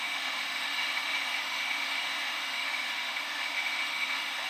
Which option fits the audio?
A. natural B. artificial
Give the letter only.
B